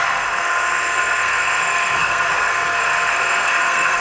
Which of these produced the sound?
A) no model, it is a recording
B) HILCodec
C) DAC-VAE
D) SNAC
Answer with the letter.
D